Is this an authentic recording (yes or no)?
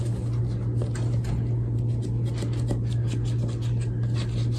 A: yes